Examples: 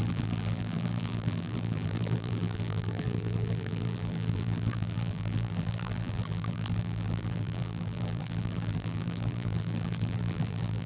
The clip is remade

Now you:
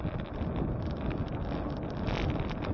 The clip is recorded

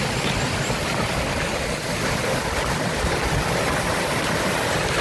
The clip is recorded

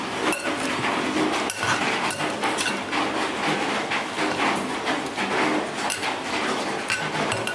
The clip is recorded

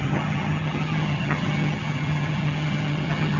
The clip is remade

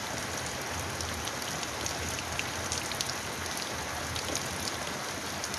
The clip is recorded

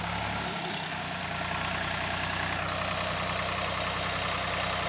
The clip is recorded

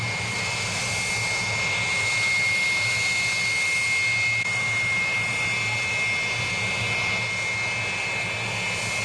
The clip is recorded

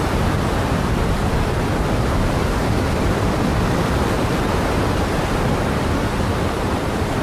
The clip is remade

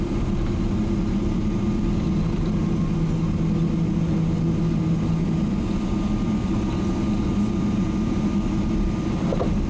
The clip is recorded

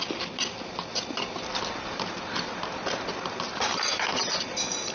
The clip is recorded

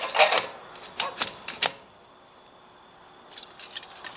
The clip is recorded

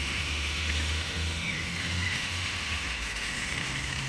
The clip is remade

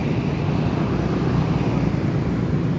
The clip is recorded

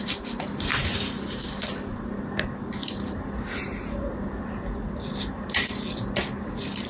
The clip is recorded